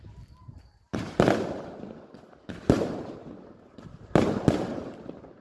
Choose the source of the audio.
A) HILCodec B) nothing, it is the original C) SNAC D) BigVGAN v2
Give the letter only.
D